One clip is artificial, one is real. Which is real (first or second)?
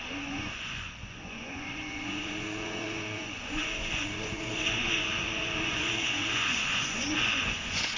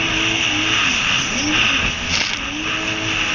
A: second